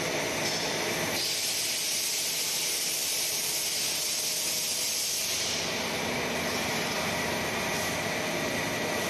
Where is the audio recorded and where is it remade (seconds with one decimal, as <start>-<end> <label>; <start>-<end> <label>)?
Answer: 0.0-9.1 recorded